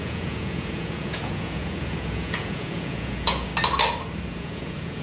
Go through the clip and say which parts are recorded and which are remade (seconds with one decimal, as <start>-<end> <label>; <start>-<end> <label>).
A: 0.0-3.5 remade; 3.5-4.3 recorded; 4.3-5.0 remade